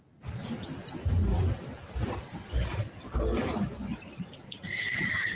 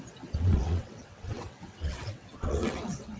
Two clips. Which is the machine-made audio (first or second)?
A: second